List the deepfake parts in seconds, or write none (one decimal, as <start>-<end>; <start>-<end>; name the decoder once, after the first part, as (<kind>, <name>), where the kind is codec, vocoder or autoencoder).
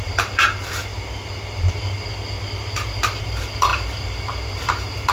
0.0-0.9 (vocoder, BigVGAN v2); 1.7-2.1; 3.2-5.1